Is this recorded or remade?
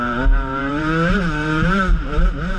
remade